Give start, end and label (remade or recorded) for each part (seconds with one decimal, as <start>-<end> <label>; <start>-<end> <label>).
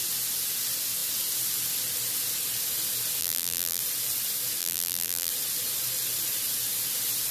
0.0-3.2 recorded; 3.2-3.8 remade; 3.8-4.6 recorded; 4.6-5.3 remade; 5.3-7.3 recorded